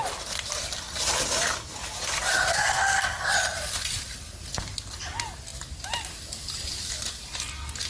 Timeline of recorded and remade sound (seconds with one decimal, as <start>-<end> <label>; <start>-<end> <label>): 0.0-2.5 recorded; 2.5-3.3 remade; 3.3-7.9 recorded